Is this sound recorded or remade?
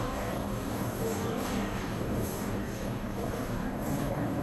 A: remade